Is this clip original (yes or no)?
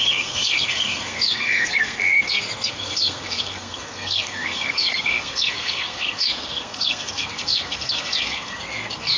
no